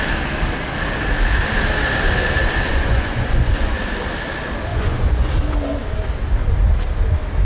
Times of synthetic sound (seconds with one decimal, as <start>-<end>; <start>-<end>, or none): 2.7-3.8; 4.7-5.3